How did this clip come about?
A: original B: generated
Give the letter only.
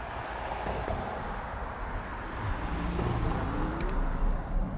A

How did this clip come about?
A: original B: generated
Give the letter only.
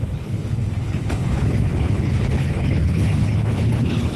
B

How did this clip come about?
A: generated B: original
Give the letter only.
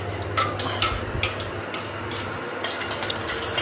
B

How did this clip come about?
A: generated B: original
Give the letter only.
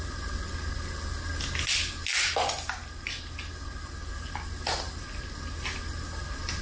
B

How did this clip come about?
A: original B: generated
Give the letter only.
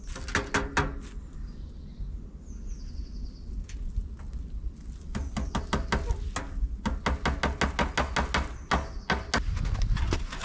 A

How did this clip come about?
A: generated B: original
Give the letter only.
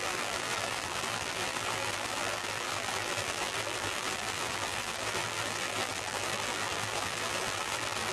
A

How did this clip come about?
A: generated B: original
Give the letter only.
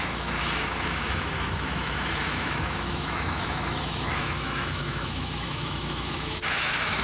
A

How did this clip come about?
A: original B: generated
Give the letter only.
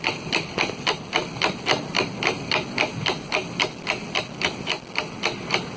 A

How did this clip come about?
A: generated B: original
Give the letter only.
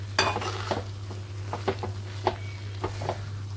B